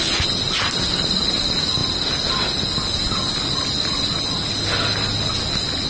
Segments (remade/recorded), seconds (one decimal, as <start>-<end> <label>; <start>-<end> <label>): 0.0-5.9 recorded